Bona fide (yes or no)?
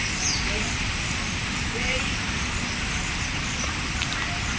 yes